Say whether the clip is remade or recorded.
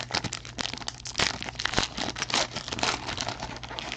recorded